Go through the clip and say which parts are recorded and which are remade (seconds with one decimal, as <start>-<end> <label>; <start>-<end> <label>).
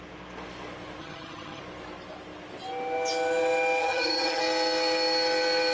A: 0.0-1.0 recorded; 1.0-1.6 remade; 1.6-3.8 recorded; 3.8-4.4 remade; 4.4-5.7 recorded